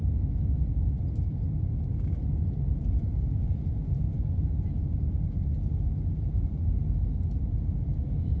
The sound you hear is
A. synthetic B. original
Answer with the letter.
B